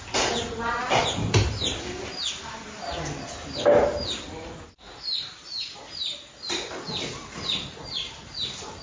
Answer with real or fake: real